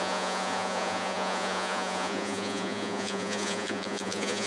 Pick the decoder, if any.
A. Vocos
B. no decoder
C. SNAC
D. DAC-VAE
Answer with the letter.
A